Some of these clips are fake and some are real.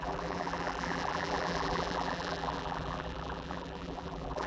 fake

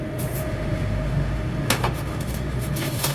fake